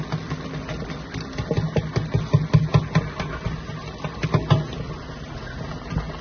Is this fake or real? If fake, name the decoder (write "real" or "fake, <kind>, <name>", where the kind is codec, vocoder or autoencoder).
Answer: real